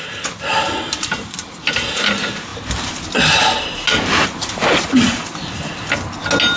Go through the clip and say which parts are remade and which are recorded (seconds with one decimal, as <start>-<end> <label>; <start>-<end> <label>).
0.0-6.6 recorded